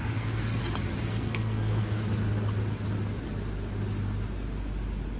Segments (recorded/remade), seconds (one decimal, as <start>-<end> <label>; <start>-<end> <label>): 0.0-0.6 remade; 0.6-1.1 recorded; 1.1-2.0 remade; 2.0-5.2 recorded

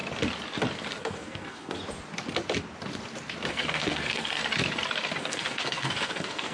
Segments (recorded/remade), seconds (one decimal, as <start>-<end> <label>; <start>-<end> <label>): 0.0-1.0 recorded; 1.0-1.8 remade; 1.8-3.5 recorded; 3.5-4.4 remade; 4.4-5.2 recorded; 5.2-6.5 remade